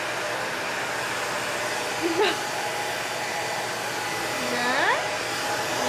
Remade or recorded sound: recorded